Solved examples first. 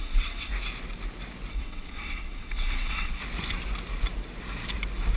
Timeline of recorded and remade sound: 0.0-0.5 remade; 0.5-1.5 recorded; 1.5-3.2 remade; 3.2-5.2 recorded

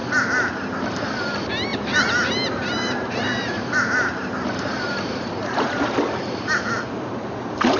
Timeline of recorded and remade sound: 0.0-1.7 recorded; 1.7-6.4 remade; 6.4-7.8 recorded